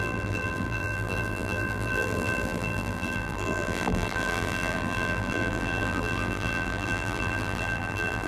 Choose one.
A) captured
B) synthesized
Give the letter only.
B